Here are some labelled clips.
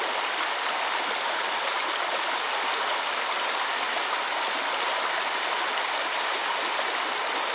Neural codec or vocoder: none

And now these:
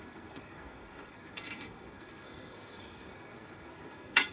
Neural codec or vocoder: codec, SNAC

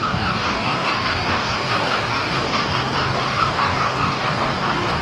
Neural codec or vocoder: codec, DAC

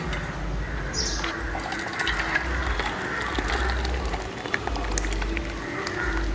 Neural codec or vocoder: none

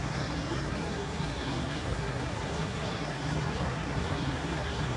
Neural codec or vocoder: codec, SNAC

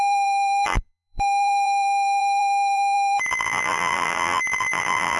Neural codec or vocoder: vocoder, BigVGAN v2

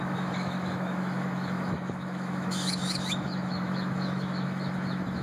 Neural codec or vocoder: autoencoder, DAC-VAE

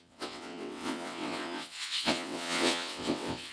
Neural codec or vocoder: vocoder, WaveNeXt